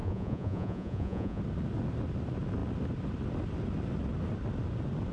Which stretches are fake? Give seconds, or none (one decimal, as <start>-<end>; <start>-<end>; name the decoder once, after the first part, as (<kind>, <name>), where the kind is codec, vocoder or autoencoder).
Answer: 0.0-1.4 (vocoder, Vocos)